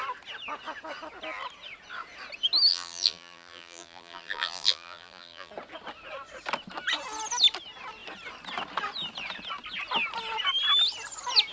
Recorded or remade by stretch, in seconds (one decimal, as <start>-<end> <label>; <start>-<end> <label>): 0.0-2.7 recorded; 2.7-5.5 remade; 5.5-11.5 recorded